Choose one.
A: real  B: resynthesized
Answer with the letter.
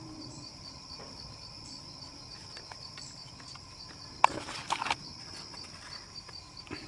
A